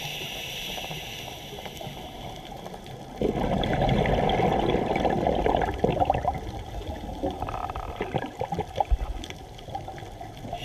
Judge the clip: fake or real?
real